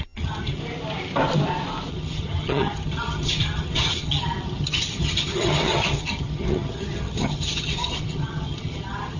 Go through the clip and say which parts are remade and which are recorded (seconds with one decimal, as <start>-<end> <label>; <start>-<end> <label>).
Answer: 0.0-0.6 remade; 0.6-1.9 recorded; 1.9-9.2 remade